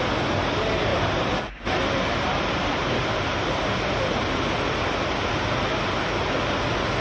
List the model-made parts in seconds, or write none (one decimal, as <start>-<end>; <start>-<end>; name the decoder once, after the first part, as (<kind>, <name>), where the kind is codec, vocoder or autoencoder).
0.9-3.6 (vocoder, BigVGAN v2)

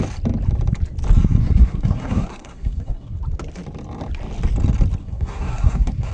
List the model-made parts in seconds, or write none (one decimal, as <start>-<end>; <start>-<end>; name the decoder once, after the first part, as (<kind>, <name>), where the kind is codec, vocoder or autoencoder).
1.4-3.2 (codec, SNAC); 5.0-6.1

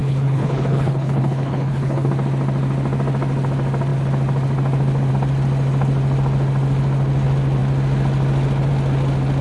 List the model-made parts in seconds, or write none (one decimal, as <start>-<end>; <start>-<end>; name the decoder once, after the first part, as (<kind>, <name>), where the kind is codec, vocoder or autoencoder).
0.0-2.1 (codec, HILCodec)

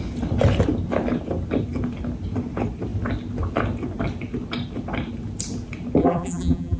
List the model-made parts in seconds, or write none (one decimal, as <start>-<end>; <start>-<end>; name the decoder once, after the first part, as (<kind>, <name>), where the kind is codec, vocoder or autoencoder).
6.0-6.8 (vocoder, BigVGAN v2)

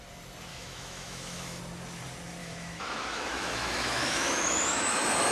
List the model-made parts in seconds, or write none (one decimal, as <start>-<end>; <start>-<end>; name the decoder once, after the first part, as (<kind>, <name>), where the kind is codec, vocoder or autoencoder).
0.5-1.6 (autoencoder, DAC-VAE); 2.4-5.3

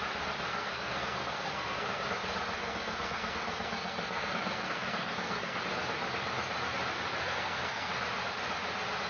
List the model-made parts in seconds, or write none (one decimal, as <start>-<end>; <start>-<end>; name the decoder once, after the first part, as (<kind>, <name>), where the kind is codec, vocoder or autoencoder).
0.5-2.0 (codec, SNAC); 2.6-5.6; 7.2-7.9

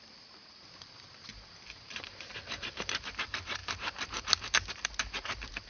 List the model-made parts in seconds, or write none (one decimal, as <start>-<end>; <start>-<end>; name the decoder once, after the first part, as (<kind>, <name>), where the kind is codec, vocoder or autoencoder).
0.0-5.7 (vocoder, BigVGAN v2)

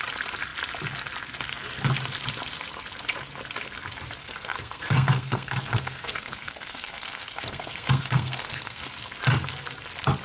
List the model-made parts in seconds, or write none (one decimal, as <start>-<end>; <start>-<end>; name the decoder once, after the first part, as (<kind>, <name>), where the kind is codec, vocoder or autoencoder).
4.2-8.8 (codec, SNAC)